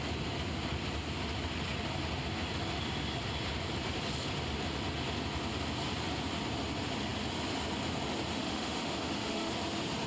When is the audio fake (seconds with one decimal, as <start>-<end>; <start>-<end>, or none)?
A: 8.3-9.5